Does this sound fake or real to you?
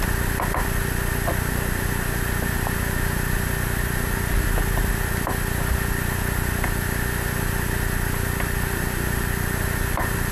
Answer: real